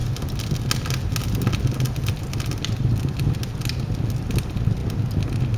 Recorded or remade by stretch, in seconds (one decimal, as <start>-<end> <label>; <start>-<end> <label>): 0.0-5.6 recorded